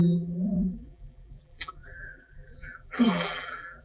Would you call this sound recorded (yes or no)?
no